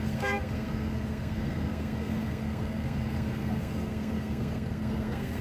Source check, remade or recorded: remade